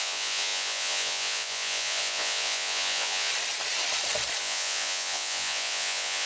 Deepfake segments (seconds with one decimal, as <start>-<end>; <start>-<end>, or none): 0.0-3.3; 4.4-6.3